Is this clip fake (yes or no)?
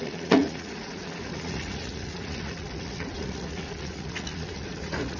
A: yes